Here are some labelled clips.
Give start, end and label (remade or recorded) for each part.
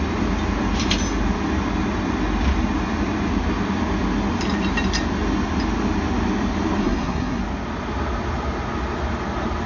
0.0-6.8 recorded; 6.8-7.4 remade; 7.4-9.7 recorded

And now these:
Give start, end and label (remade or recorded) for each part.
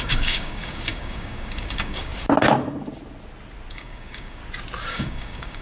0.0-2.1 remade; 2.1-3.7 recorded; 3.7-4.4 remade; 4.4-4.9 recorded; 4.9-5.6 remade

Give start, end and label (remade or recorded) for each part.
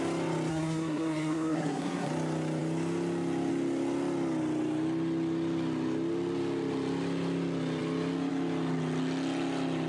0.0-0.5 recorded; 0.5-2.1 remade; 2.1-9.9 recorded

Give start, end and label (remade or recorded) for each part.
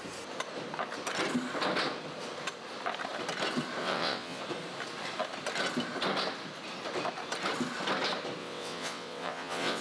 0.0-3.8 recorded; 3.8-4.4 remade; 4.4-8.4 recorded; 8.4-9.8 remade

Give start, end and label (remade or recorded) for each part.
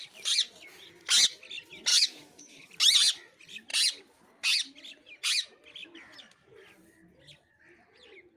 0.0-1.9 recorded; 1.9-2.7 remade; 2.7-8.4 recorded